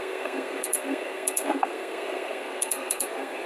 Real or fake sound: fake